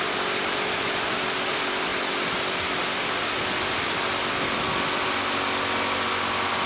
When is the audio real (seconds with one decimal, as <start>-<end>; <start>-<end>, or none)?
0.0-6.7